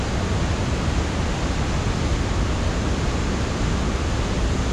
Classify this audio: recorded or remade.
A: recorded